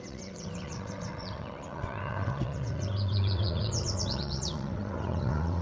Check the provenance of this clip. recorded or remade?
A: remade